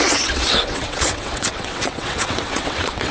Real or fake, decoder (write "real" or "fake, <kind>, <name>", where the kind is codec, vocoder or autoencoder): fake, vocoder, WaveNeXt